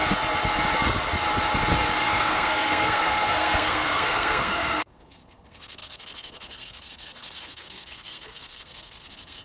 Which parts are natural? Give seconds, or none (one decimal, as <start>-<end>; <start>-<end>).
0.0-2.0